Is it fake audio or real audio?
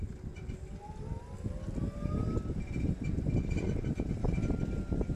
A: real